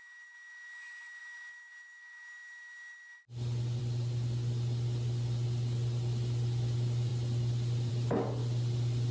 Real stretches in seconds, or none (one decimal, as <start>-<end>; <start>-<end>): 0.0-9.1